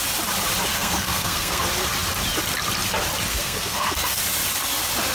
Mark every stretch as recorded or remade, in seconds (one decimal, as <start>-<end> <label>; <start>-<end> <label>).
0.0-0.7 recorded; 0.7-1.6 remade; 1.6-3.3 recorded; 3.3-4.2 remade; 4.2-5.1 recorded